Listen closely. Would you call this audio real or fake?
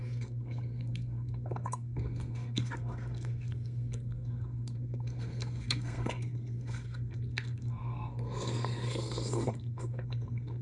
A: fake